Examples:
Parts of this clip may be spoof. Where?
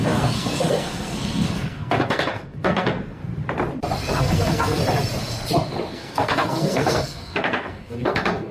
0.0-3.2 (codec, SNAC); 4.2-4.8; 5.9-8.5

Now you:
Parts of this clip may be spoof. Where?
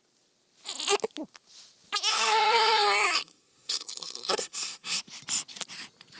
2.1-5.0 (codec, SNAC)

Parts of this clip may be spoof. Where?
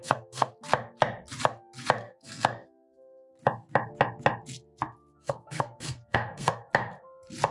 0.0-0.5 (codec, SNAC); 2.0-3.3; 5.1-6.7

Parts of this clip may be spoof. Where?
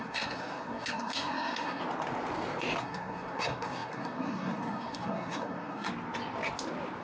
0.0-1.8 (codec, SNAC); 2.8-5.9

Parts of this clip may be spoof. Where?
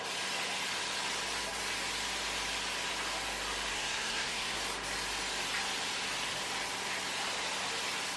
3.7-4.6 (codec, SNAC)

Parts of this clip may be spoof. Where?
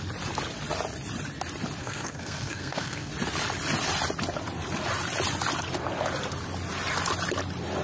1.8-3.1 (codec, SNAC)